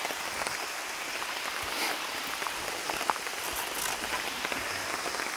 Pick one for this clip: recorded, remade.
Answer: recorded